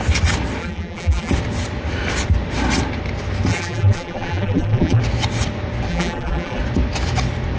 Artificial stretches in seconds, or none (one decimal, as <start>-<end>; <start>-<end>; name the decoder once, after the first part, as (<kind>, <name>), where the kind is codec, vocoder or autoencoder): 0.6-1.3 (vocoder, BigVGAN v2); 3.5-5.0; 5.9-6.6